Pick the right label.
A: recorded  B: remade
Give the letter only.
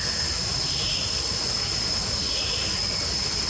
A